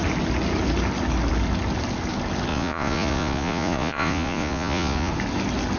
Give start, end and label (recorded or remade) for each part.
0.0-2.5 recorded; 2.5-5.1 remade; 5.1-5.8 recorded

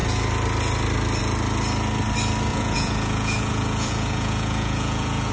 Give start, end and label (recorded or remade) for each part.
0.0-2.5 recorded; 2.5-5.3 remade

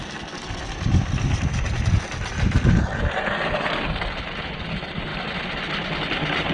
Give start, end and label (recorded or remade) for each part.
0.0-6.5 recorded

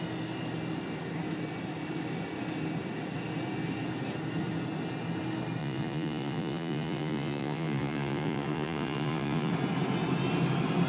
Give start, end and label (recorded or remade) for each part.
0.0-5.6 recorded; 5.6-9.5 remade; 9.5-10.9 recorded

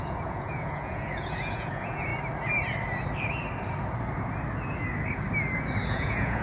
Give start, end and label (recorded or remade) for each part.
0.0-2.1 remade; 2.1-5.9 recorded; 5.9-6.4 remade

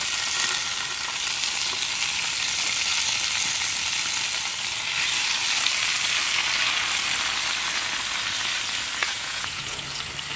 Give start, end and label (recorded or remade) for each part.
0.0-9.0 recorded; 9.0-9.8 remade; 9.8-10.4 recorded

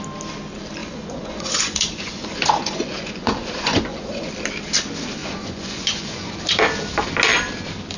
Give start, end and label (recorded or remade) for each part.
0.0-0.8 recorded; 0.8-4.3 remade; 4.3-5.2 recorded; 5.2-6.4 remade; 6.4-8.0 recorded

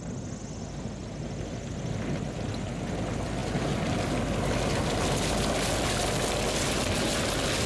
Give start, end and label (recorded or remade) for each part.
0.0-7.7 recorded